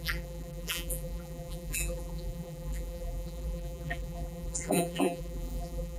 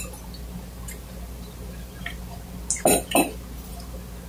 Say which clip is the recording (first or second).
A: second